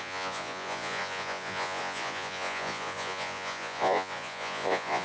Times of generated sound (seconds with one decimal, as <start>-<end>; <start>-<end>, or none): 0.0-5.0